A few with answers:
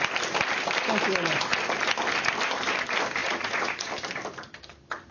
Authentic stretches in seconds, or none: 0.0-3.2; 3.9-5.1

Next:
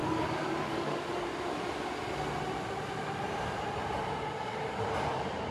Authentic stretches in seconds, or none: 1.3-5.5

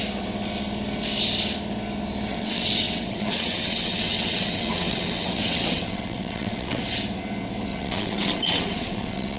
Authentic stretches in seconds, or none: 0.0-2.3; 6.8-7.7